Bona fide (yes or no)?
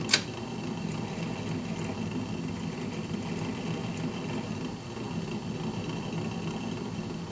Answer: yes